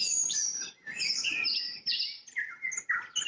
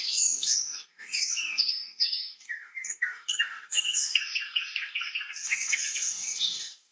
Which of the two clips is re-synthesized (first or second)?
second